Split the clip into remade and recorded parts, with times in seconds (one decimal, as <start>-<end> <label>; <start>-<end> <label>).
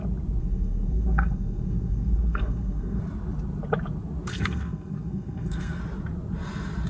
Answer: 0.0-0.4 recorded; 0.4-3.0 remade; 3.0-4.3 recorded; 4.3-5.8 remade; 5.8-6.9 recorded